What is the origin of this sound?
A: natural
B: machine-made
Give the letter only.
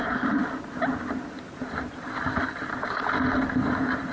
A